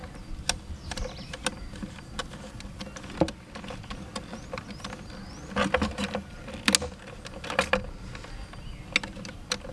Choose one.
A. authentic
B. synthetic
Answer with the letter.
A